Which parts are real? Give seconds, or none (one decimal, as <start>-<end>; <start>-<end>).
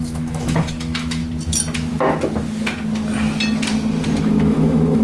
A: 1.2-4.2